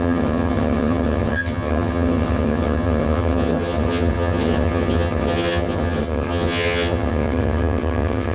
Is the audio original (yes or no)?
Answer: no